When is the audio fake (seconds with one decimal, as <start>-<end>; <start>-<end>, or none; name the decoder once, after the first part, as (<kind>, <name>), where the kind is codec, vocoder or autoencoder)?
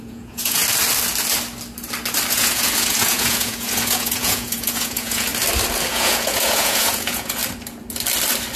0.0-0.6 (vocoder, Vocos); 2.3-5.3; 5.9-7.4